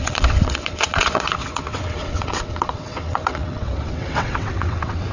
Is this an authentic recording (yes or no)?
no